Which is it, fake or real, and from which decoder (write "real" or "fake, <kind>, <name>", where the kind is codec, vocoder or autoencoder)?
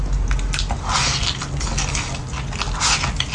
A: real